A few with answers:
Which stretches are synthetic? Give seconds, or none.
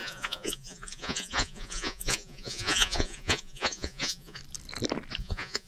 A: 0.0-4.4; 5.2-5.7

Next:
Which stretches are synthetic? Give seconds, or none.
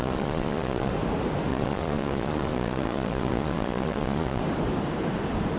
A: 0.0-0.9; 1.5-4.4